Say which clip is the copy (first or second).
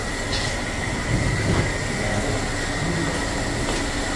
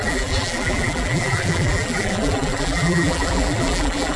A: second